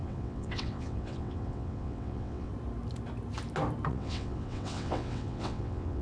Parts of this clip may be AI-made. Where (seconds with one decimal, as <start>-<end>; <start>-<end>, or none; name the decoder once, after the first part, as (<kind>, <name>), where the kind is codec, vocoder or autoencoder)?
0.0-2.5 (vocoder, WaveNeXt); 3.9-6.0